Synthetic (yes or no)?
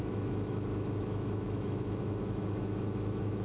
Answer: yes